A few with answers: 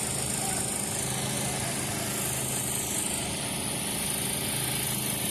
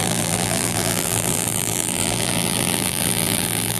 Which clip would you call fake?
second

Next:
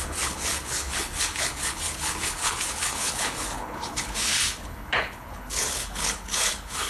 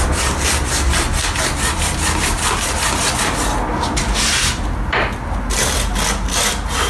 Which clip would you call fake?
first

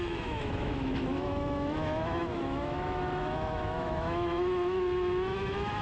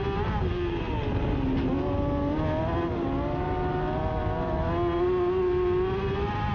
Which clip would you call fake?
first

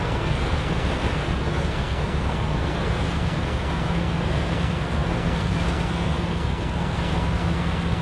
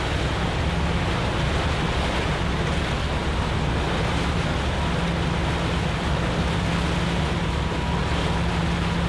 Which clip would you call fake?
first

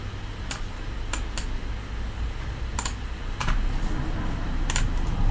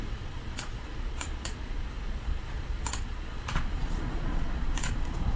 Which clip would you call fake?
second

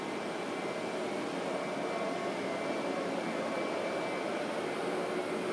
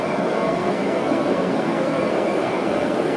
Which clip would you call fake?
second